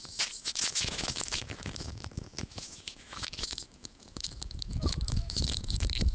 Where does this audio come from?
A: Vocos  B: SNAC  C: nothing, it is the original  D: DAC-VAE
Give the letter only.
D